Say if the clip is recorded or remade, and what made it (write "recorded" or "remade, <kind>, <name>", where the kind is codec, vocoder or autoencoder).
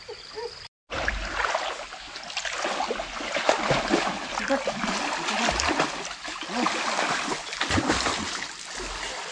recorded